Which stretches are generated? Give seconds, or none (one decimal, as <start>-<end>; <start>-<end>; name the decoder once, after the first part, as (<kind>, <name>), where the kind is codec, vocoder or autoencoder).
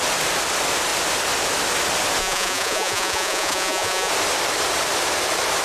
2.2-4.1 (vocoder, Vocos)